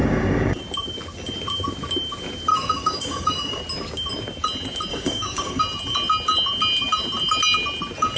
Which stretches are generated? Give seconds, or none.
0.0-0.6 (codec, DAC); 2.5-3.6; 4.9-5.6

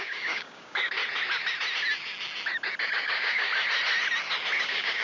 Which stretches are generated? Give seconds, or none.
0.0-1.0 (codec, DAC); 2.9-3.5; 4.6-5.0

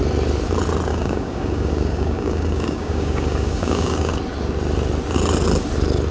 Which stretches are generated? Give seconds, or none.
0.9-4.1 (codec, DAC)

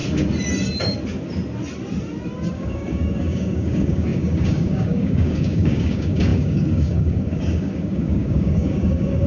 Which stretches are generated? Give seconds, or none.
2.5-9.3 (codec, DAC)

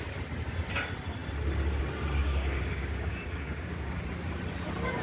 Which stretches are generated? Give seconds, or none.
2.2-4.0 (codec, DAC)

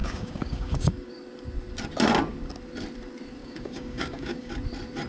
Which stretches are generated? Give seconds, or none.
0.0-1.1 (codec, DAC); 3.4-4.5

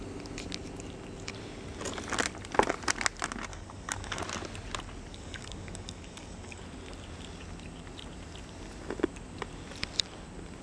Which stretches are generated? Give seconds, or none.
3.5-4.2 (codec, DAC); 5.1-6.6

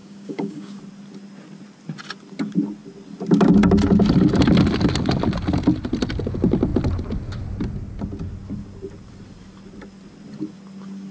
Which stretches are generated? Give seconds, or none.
0.0-0.8 (codec, DAC)